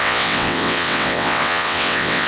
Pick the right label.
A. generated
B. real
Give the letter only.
A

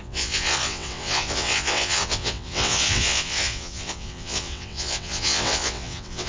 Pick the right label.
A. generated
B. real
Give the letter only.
A